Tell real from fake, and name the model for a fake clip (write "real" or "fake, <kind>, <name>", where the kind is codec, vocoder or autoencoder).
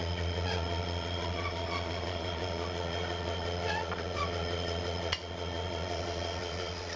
fake, vocoder, Vocos